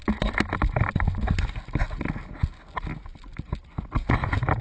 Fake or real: real